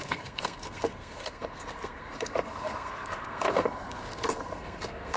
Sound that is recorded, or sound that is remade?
remade